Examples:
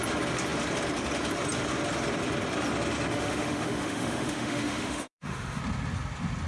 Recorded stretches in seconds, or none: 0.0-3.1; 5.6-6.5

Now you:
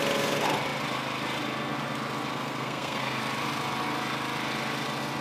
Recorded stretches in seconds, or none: 0.0-2.3; 3.2-5.2

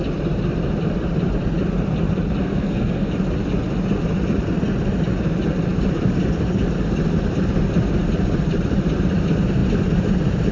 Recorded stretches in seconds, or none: 0.0-2.4; 3.1-10.5

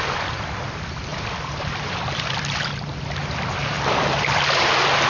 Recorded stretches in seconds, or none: none

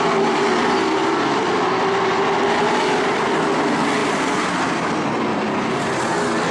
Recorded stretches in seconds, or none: 0.0-4.0; 4.6-5.3; 5.8-6.5

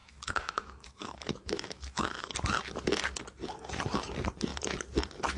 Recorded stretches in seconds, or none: 2.3-5.4

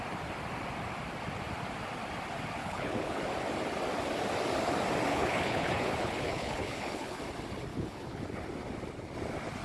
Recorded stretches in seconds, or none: 0.0-2.6; 3.2-5.1; 7.2-7.7; 8.2-9.6

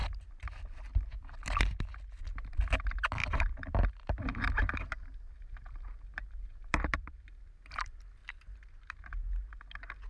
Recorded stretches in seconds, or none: 0.0-3.2; 7.8-8.2; 9.5-10.1